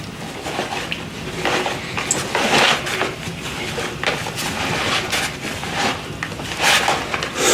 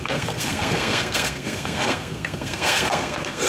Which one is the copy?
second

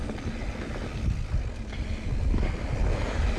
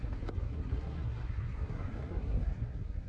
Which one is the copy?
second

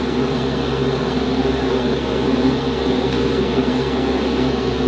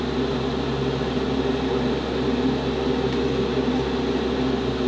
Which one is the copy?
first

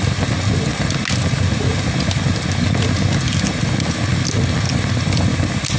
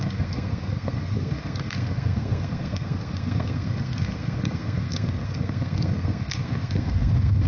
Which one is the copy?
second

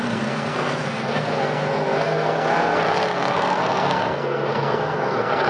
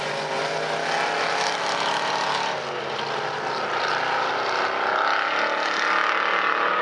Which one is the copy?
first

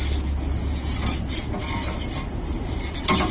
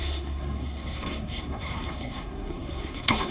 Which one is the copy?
second